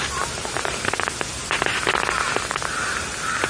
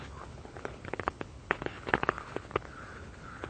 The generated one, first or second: second